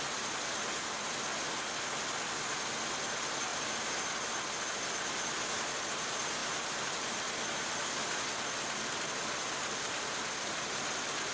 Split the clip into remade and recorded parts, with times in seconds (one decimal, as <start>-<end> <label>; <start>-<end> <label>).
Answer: 0.0-1.3 remade; 1.3-2.9 recorded; 2.9-3.5 remade; 3.5-4.7 recorded; 4.7-6.4 remade; 6.4-8.6 recorded; 8.6-11.3 remade